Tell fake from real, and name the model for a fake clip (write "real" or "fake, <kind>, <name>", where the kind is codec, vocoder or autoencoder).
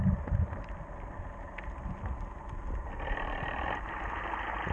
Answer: real